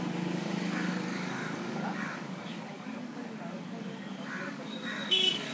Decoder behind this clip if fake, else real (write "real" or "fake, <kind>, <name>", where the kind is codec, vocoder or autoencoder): fake, codec, DAC